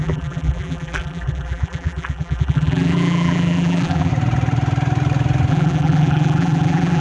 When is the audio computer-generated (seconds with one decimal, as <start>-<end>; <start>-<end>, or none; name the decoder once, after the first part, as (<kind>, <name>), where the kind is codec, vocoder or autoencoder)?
0.0-4.1 (vocoder, BigVGAN v2); 5.5-7.0